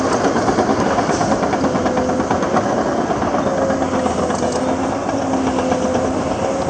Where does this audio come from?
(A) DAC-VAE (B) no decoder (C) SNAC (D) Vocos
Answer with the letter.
B